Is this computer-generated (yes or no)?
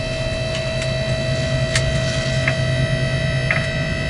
no